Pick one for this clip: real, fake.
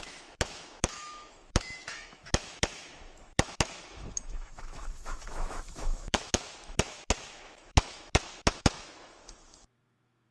fake